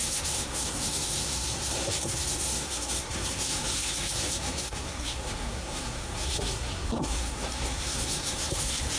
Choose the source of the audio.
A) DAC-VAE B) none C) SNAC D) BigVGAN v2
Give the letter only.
C